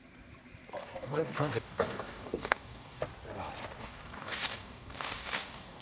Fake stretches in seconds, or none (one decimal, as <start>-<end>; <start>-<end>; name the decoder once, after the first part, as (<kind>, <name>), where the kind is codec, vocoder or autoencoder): 0.8-3.0 (codec, DAC); 3.8-5.8